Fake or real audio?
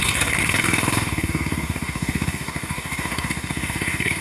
fake